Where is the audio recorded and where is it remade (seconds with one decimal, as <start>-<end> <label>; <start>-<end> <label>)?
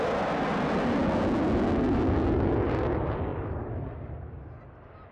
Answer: 0.0-5.1 recorded